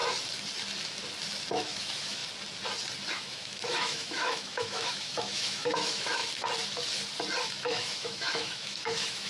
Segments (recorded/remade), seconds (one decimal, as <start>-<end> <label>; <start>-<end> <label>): 0.0-1.5 recorded; 1.5-2.2 remade; 2.2-3.1 recorded; 3.1-6.2 remade; 6.2-7.4 recorded; 7.4-9.3 remade